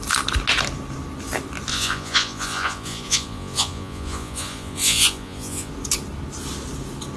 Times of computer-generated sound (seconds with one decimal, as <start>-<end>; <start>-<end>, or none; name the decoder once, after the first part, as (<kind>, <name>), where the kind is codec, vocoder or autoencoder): 1.7-5.7 (vocoder, Vocos)